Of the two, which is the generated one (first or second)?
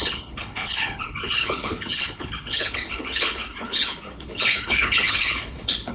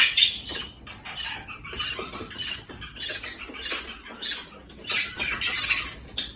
first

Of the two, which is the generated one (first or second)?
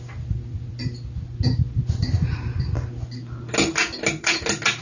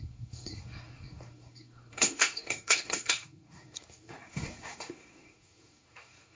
second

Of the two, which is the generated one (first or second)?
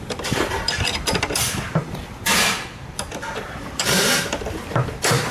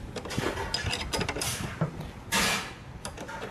first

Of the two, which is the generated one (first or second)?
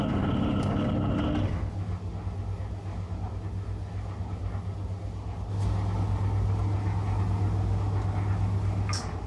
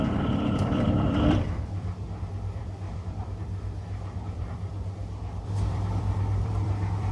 second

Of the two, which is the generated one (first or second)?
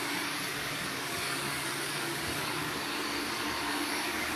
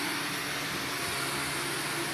first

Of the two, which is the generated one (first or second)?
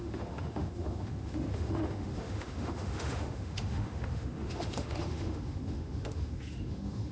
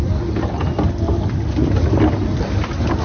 first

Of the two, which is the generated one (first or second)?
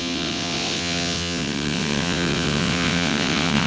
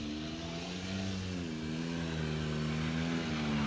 first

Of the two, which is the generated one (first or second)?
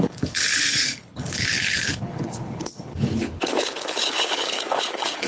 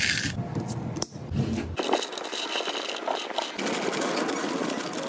first